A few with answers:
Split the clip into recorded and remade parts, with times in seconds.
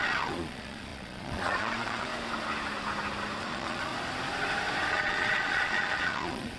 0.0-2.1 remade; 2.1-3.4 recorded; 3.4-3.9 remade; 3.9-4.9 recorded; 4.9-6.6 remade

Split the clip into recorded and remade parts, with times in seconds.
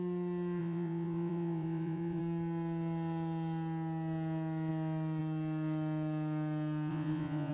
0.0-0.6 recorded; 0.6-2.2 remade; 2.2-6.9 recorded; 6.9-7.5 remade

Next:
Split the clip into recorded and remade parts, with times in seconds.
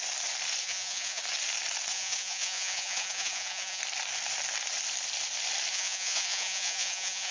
0.0-0.6 recorded; 0.6-1.2 remade; 1.2-1.9 recorded; 1.9-3.8 remade; 3.8-5.7 recorded; 5.7-7.3 remade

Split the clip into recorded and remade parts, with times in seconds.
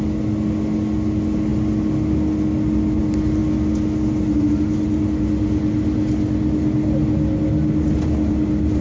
0.0-8.8 recorded